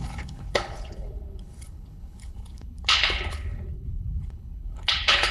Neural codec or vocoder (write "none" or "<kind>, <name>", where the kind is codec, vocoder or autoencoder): codec, HILCodec